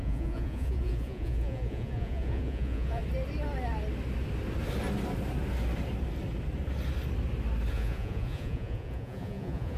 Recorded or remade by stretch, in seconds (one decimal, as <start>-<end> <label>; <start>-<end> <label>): 0.0-3.0 remade; 3.0-7.7 recorded; 7.7-9.8 remade